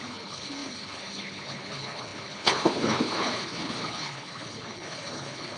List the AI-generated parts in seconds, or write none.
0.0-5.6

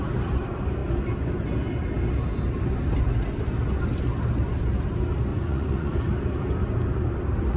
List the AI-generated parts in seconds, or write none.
5.3-5.9

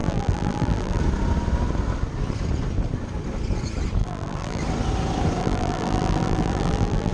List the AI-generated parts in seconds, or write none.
0.0-1.0; 4.0-4.6; 5.4-7.1

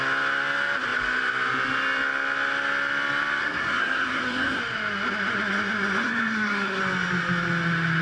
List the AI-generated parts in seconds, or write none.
3.4-4.6; 6.0-6.8

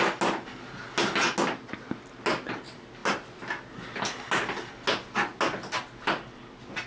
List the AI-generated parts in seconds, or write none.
none

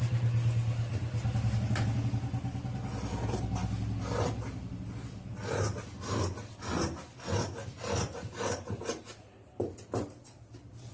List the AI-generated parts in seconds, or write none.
none

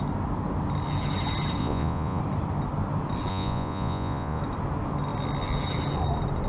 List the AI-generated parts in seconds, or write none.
1.6-2.2; 3.3-4.4